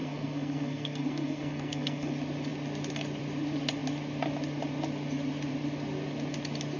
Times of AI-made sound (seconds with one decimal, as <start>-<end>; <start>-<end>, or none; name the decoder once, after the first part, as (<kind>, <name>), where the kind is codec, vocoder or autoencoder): 0.0-2.1 (codec, SNAC)